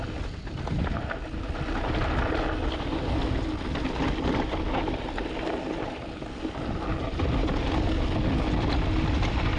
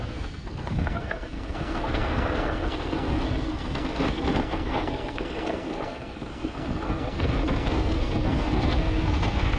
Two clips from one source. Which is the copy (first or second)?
second